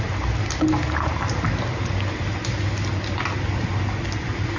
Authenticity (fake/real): real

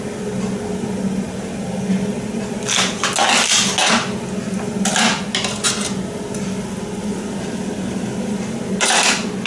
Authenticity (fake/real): real